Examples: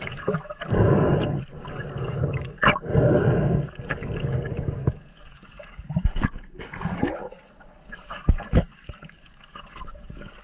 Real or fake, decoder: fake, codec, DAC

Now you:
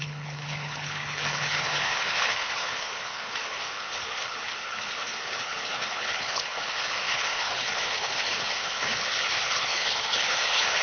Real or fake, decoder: fake, codec, HILCodec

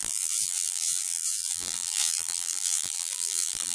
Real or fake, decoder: fake, vocoder, BigVGAN v2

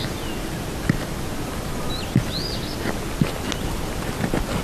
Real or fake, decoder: real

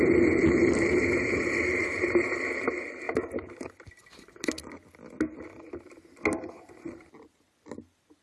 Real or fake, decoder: real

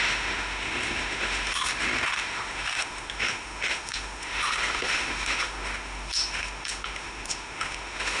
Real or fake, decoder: fake, autoencoder, DAC-VAE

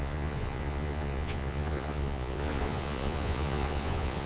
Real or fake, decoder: fake, vocoder, Vocos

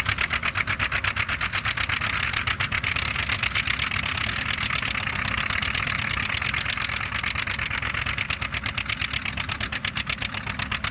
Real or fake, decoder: real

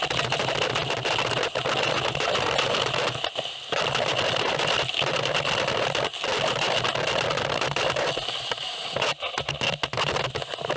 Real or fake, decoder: real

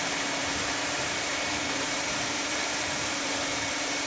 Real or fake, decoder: fake, vocoder, BigVGAN v2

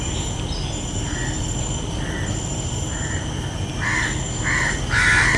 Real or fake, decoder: fake, vocoder, BigVGAN v2